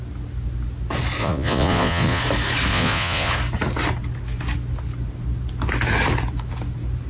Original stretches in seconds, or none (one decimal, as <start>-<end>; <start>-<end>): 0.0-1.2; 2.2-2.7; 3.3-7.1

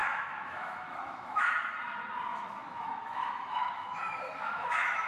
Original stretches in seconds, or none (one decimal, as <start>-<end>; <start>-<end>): 1.5-2.3

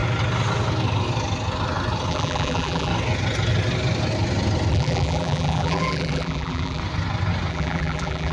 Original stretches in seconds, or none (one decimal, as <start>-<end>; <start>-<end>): 0.0-2.1; 2.9-4.7; 6.8-7.5

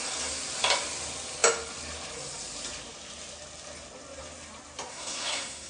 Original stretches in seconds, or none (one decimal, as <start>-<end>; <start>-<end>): 0.0-4.9

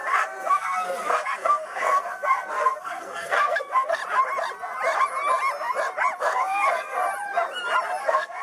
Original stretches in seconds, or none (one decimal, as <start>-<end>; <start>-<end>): 4.0-6.2; 7.0-8.0

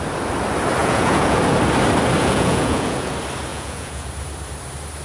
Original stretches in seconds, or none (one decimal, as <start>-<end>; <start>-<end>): 0.0-0.8; 1.4-2.2; 3.1-3.5; 4.1-5.0